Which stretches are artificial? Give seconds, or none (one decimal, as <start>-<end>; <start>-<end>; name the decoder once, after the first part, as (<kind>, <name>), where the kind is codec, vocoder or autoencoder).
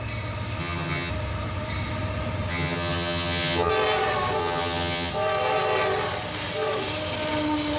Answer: 0.6-1.1 (vocoder, HiFi-GAN); 2.5-3.7; 4.4-5.1